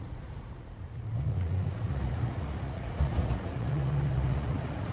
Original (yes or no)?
no